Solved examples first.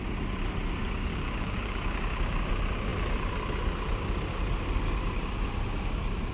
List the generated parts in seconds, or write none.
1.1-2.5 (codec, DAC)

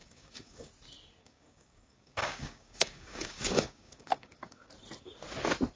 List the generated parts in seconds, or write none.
0.0-0.7 (codec, DAC); 1.2-4.7

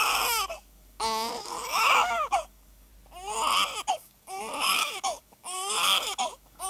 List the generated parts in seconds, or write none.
0.0-2.9 (codec, DAC); 3.9-6.7

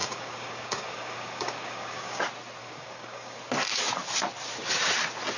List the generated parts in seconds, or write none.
0.0-2.2 (codec, DAC); 2.6-3.4

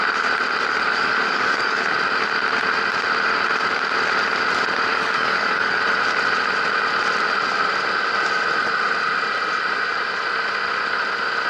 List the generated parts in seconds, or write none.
0.9-1.8 (codec, DAC); 4.9-5.8

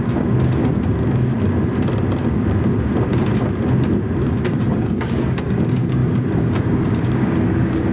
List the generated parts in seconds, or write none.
0.0-1.3 (codec, DAC); 2.3-2.7; 4.2-7.9

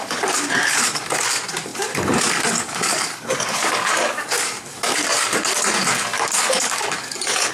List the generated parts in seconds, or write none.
0.0-7.5 (codec, DAC)

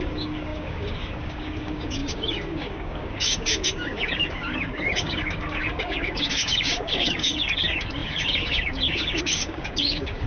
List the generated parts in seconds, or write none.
0.0-10.3 (codec, DAC)